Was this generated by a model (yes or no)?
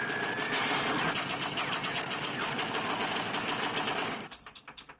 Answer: no